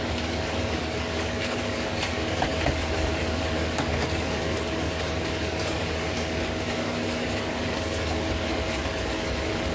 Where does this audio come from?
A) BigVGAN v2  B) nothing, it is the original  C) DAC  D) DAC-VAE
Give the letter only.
C